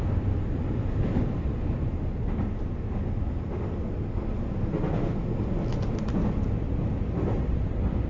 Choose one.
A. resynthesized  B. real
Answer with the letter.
B